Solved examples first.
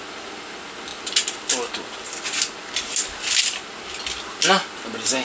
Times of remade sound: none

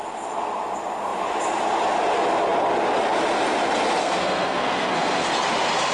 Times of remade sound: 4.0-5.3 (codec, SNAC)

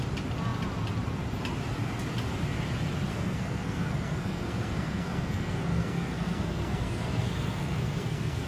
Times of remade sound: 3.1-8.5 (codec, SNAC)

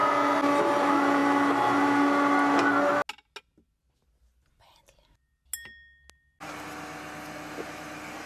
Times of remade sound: none

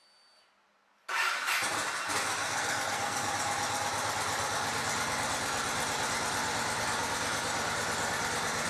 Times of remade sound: 2.2-3.3 (codec, SNAC)

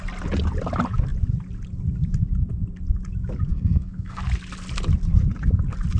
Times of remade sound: 3.5-4.2 (codec, SNAC)